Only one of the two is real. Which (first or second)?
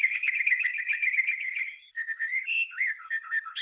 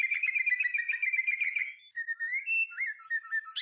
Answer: second